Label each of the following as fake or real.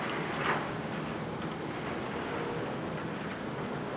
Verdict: real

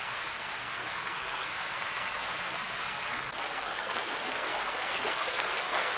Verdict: fake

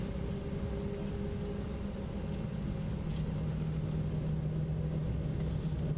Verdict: real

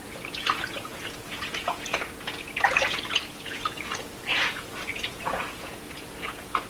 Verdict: fake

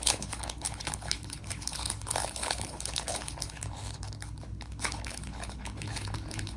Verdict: fake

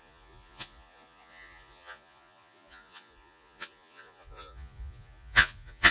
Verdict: fake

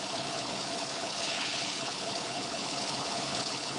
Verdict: fake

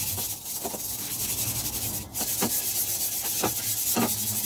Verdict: real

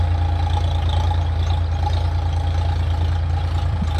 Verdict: real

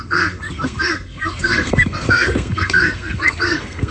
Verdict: fake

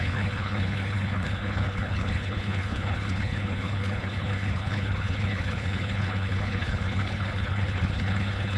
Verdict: fake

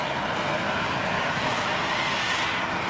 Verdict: real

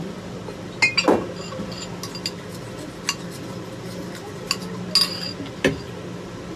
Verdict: real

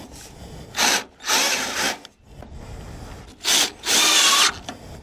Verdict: real